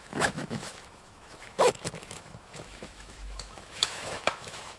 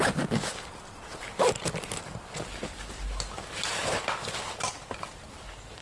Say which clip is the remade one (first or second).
first